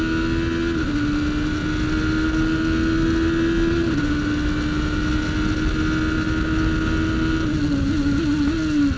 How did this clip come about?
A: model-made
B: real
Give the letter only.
B